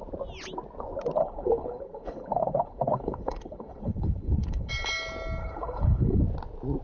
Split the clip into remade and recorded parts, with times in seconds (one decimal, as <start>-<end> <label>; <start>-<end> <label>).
0.0-1.2 recorded; 1.2-4.7 remade; 4.7-5.4 recorded; 5.4-6.2 remade; 6.2-6.8 recorded